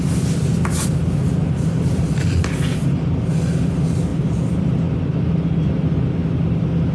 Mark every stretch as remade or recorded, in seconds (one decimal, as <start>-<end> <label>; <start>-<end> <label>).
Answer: 0.0-6.9 recorded